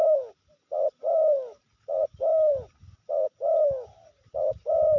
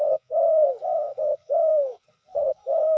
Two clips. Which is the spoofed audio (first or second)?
second